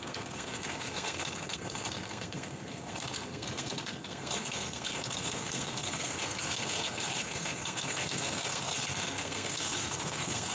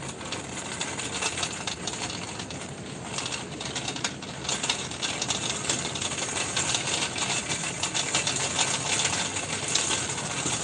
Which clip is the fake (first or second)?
first